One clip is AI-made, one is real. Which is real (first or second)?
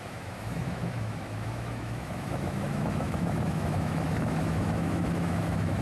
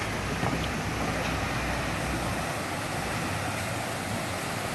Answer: second